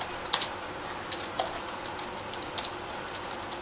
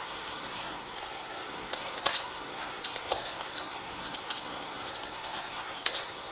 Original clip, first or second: first